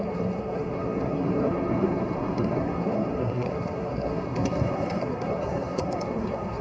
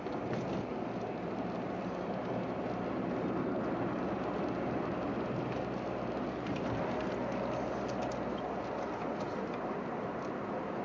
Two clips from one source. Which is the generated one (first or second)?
first